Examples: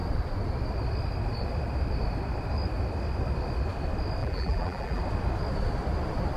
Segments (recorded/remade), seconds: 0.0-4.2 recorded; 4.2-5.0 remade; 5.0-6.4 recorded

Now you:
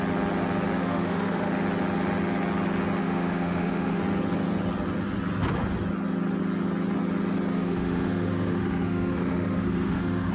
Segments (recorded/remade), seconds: 0.0-0.8 recorded; 0.8-1.5 remade; 1.5-3.0 recorded; 3.0-4.0 remade; 4.0-7.5 recorded; 7.5-10.3 remade

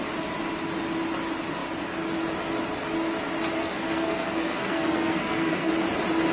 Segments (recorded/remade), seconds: 0.0-3.6 recorded; 3.6-5.7 remade; 5.7-6.3 recorded

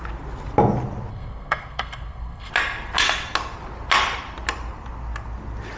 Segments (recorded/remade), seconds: 0.0-1.1 recorded; 1.1-2.5 remade; 2.5-5.8 recorded